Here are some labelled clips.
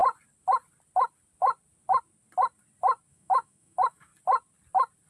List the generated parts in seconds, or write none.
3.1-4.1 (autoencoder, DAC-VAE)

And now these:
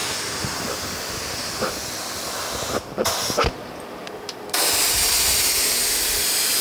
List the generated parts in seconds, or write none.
none

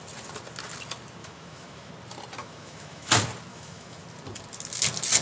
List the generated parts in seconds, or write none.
1.2-1.9 (autoencoder, DAC-VAE); 2.4-3.1; 3.5-4.0

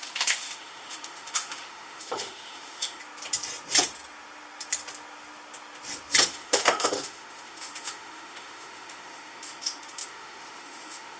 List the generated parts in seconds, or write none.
0.0-3.0 (autoencoder, DAC-VAE); 6.3-11.2

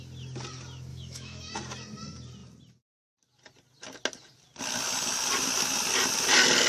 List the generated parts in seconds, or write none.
0.9-1.5 (autoencoder, DAC-VAE)